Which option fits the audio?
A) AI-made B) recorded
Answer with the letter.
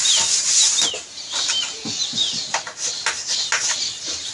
B